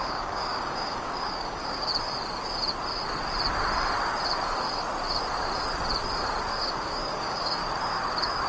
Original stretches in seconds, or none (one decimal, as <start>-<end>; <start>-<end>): 1.9-6.6; 7.6-8.5